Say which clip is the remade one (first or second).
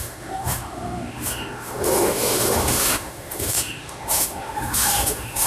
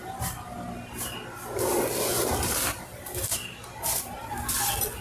first